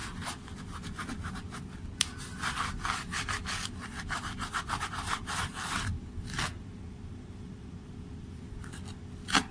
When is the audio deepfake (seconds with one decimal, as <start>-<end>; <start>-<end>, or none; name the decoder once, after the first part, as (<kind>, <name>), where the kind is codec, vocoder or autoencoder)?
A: none